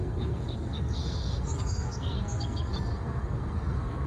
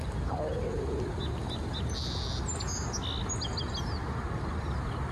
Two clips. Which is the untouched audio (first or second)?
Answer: second